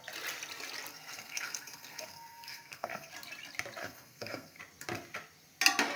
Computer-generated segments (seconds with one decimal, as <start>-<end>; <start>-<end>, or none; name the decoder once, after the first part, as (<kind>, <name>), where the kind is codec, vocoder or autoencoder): 0.9-3.1 (codec, SNAC); 3.8-4.6